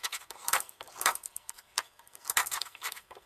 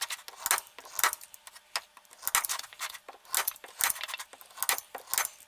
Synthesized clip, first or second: first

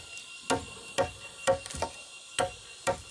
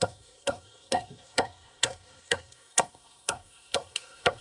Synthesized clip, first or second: second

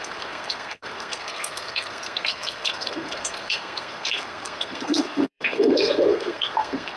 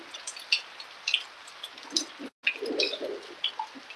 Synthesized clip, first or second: first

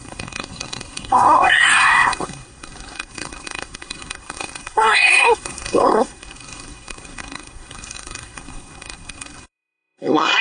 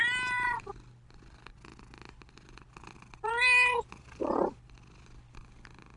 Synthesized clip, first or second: first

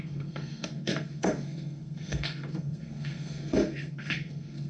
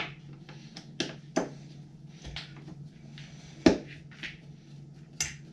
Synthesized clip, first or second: first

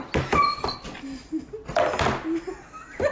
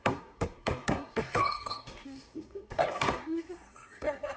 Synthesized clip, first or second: second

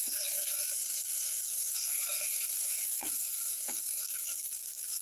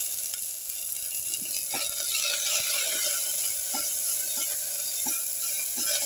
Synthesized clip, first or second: first